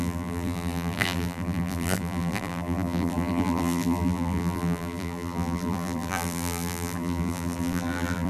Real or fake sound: fake